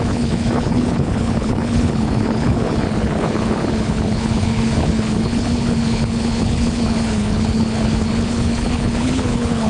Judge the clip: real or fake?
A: fake